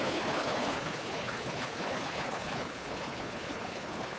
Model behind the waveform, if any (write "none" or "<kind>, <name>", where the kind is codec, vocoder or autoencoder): codec, HILCodec